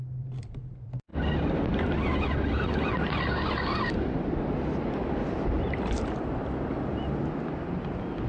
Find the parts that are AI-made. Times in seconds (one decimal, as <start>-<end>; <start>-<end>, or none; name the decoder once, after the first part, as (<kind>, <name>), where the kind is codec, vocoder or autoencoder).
none